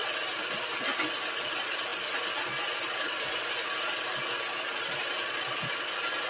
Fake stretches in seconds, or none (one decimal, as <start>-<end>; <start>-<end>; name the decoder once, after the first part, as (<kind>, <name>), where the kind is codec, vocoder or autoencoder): none